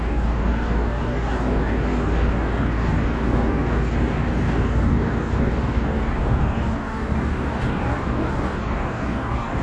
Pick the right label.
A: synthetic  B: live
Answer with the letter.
A